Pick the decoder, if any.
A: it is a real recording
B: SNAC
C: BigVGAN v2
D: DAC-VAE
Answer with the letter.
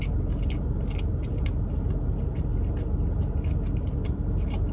A